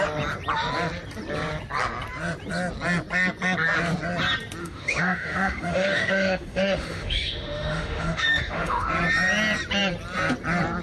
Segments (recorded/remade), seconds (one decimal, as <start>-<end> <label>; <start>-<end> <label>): 0.0-4.6 recorded; 4.6-8.9 remade; 8.9-10.8 recorded